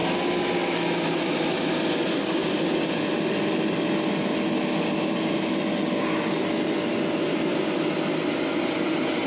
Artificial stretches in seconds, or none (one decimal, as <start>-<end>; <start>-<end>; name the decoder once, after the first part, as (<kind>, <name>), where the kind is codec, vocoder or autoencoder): none